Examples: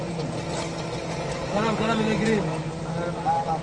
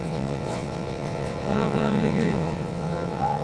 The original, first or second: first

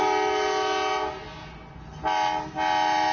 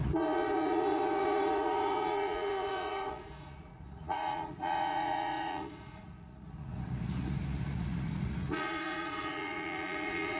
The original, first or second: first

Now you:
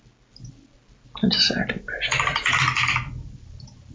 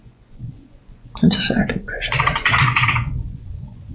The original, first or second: first